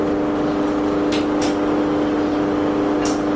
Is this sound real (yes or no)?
yes